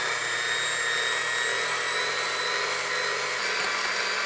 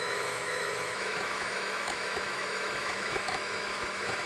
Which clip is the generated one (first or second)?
second